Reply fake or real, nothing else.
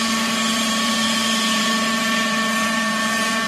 fake